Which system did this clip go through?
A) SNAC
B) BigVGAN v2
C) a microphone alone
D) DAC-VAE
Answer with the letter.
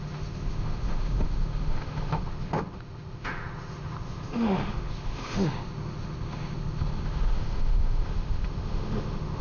D